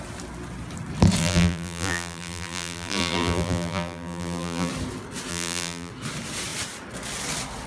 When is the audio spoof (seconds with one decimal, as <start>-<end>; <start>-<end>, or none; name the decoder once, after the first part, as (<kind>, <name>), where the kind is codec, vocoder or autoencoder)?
1.2-4.7 (vocoder, BigVGAN v2); 5.3-5.9